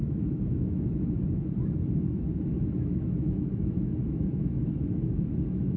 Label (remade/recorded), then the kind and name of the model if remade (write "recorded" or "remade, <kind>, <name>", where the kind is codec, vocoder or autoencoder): remade, autoencoder, DAC-VAE